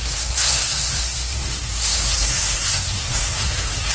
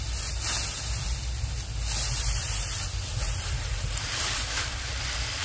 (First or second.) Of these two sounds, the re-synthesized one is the first